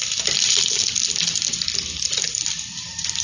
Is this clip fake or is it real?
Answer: fake